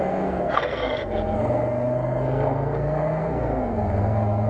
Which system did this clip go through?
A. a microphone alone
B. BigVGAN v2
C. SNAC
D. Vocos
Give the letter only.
C